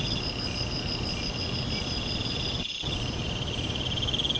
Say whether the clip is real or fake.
real